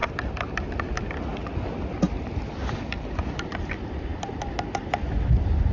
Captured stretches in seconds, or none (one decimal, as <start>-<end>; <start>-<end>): 0.0-5.7